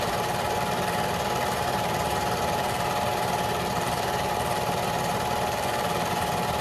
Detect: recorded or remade remade